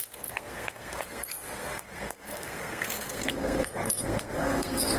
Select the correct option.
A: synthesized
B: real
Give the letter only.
A